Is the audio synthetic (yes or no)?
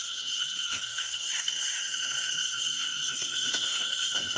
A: yes